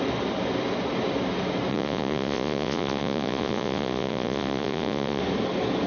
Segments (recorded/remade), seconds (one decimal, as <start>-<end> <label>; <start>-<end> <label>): 0.0-1.7 recorded; 1.7-5.2 remade; 5.2-5.9 recorded